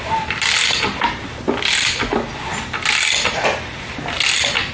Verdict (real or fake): real